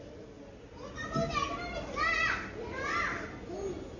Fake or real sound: real